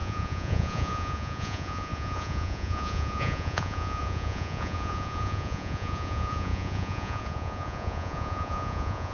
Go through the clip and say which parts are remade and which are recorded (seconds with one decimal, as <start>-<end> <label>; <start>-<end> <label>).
0.0-9.1 remade